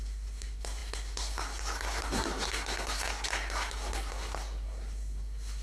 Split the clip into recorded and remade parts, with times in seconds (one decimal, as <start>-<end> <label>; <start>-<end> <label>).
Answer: 0.0-5.6 remade